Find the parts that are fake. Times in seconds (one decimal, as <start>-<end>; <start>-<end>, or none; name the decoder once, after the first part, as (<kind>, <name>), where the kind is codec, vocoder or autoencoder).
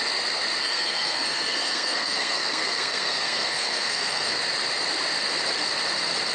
0.6-4.4 (codec, SNAC)